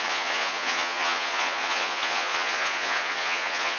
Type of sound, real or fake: fake